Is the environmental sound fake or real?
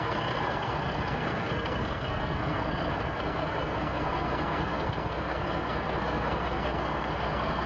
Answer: fake